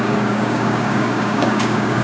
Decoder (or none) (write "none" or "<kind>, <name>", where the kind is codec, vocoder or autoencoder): codec, DAC